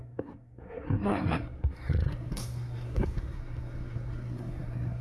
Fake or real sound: fake